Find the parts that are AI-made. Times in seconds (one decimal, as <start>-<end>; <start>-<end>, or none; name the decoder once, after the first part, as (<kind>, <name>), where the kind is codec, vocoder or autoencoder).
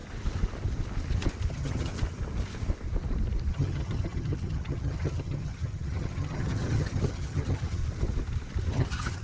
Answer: 1.5-1.9 (vocoder, HiFi-GAN); 3.5-7.8; 8.7-9.2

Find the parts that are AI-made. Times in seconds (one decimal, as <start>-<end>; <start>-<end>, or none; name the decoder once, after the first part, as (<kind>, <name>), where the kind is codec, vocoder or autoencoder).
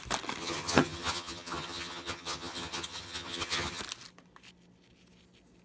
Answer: 0.4-3.8 (vocoder, HiFi-GAN)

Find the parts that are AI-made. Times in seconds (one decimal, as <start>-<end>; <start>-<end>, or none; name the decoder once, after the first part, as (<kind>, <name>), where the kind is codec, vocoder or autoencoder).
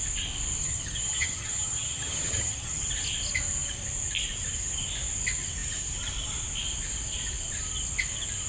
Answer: 0.6-2.8 (vocoder, HiFi-GAN)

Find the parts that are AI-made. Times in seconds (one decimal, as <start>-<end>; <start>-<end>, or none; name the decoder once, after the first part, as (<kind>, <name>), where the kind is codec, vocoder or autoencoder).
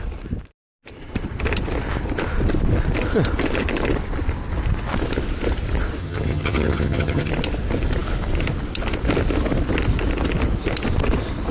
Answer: 6.0-7.3 (vocoder, HiFi-GAN)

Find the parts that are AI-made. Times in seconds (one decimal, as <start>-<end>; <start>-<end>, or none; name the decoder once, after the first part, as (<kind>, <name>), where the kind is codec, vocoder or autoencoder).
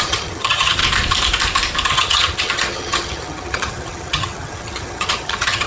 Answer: 0.0-0.8 (vocoder, HiFi-GAN); 1.9-5.7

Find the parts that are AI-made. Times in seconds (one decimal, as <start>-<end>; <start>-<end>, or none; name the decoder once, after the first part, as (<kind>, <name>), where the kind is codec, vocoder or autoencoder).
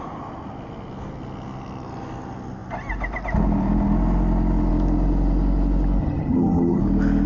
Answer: 6.0-6.8 (vocoder, HiFi-GAN)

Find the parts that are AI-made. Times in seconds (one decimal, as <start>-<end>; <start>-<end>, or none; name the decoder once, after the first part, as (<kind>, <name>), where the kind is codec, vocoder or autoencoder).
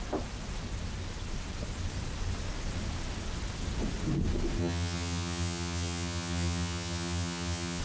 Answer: 4.6-7.8 (vocoder, HiFi-GAN)